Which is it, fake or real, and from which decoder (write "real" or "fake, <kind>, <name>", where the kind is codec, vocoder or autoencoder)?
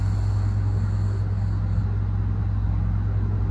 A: real